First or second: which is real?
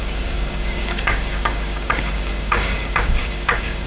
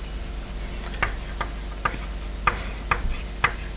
second